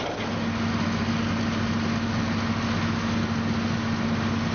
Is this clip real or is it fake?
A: real